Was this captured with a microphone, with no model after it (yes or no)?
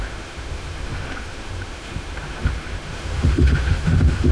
no